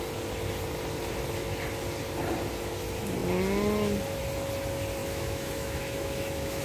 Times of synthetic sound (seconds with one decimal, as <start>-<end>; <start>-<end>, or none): 5.0-6.6